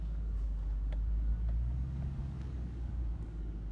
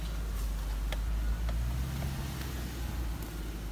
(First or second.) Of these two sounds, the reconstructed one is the first